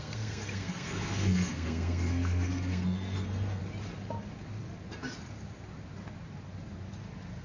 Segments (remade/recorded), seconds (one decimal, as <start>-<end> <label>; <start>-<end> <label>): 0.0-3.6 remade; 3.6-7.4 recorded